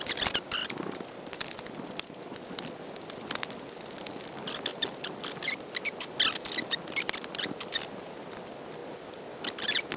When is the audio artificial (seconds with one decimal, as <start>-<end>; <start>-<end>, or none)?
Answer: none